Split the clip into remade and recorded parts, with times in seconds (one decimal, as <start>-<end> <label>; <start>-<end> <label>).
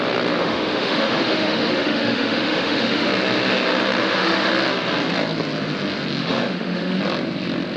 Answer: 0.0-0.4 recorded; 0.4-3.1 remade; 3.1-4.0 recorded; 4.0-4.5 remade; 4.5-6.2 recorded; 6.2-7.0 remade; 7.0-7.8 recorded